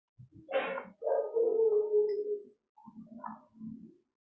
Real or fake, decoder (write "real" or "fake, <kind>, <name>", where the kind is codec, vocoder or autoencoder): real